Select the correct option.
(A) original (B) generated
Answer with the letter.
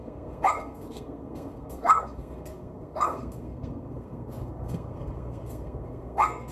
B